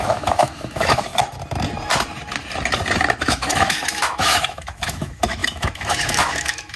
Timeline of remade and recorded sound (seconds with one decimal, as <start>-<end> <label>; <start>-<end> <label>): 0.0-1.1 remade; 1.1-3.2 recorded; 3.2-6.8 remade